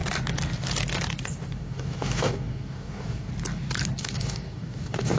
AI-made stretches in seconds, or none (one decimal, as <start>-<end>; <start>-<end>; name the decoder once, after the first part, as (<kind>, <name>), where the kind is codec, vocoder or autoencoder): 1.2-3.3 (codec, DAC); 4.0-5.2